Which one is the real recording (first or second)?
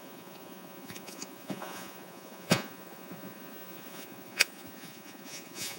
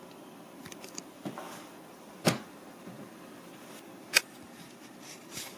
second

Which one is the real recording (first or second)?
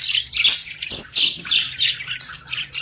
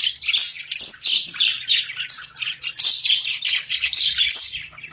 first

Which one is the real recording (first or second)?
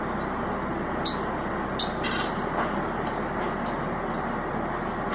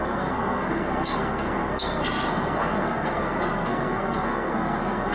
first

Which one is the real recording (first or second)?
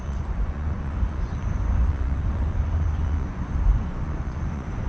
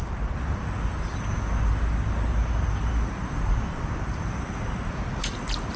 second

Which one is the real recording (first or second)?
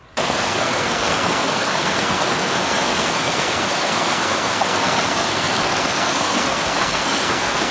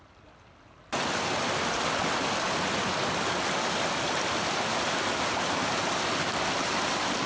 second